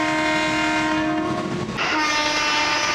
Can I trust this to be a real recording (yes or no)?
yes